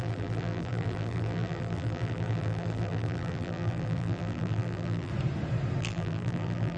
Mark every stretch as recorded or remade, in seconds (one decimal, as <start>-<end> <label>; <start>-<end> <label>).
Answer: 0.0-5.1 remade; 5.1-5.8 recorded; 5.8-6.8 remade